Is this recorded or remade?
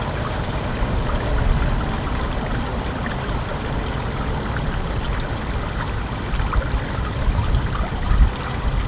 recorded